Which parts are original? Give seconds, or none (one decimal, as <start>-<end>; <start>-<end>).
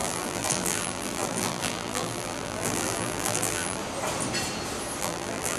3.8-5.0